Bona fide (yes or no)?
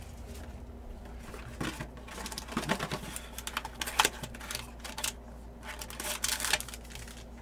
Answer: yes